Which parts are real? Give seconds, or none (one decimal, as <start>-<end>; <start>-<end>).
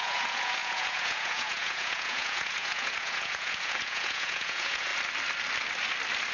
4.9-6.3